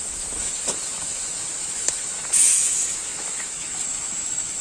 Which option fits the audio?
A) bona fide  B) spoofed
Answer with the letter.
B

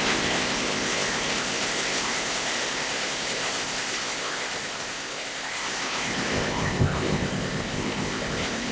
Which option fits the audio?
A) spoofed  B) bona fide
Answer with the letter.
A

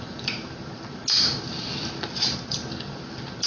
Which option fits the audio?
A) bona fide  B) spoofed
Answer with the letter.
A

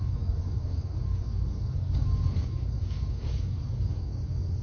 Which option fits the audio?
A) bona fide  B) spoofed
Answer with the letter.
B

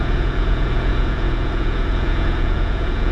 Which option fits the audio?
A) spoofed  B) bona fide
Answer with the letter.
A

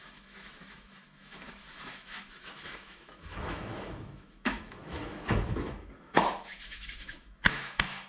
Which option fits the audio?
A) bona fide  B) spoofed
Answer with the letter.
B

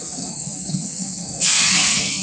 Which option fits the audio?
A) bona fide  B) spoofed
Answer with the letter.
B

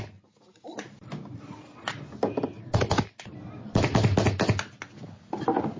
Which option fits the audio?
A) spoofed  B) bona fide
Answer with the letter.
B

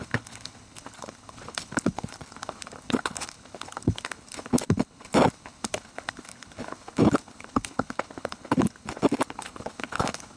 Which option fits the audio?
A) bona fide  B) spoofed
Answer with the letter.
B